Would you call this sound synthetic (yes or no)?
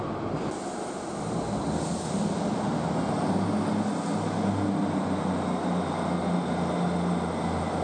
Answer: no